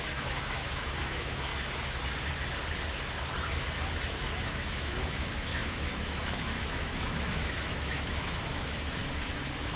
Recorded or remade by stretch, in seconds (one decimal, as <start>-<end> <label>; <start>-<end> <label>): 0.0-1.5 remade; 1.5-4.4 recorded; 4.4-9.0 remade; 9.0-9.8 recorded

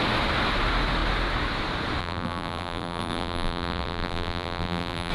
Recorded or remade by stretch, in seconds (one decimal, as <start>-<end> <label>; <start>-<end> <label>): 0.0-2.0 recorded; 2.0-5.1 remade

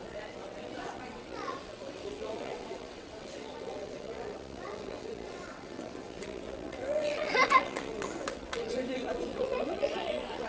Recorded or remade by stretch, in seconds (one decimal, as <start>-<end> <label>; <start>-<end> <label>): 0.0-10.5 remade

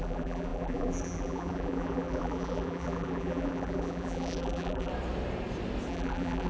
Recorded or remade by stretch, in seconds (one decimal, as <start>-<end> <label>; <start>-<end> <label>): 0.0-4.9 remade; 4.9-5.9 recorded; 5.9-6.5 remade